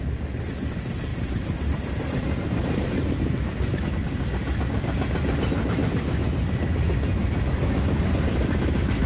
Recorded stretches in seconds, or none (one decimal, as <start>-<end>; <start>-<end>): 0.0-1.1; 3.9-9.1